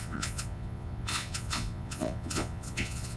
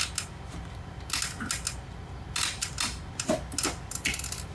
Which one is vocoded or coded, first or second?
first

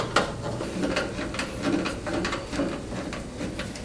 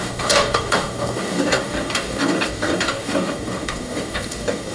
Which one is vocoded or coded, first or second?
second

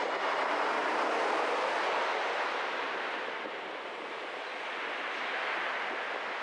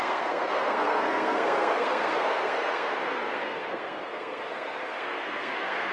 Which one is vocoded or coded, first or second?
second